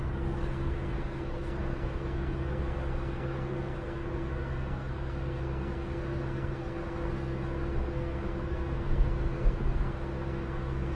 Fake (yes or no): yes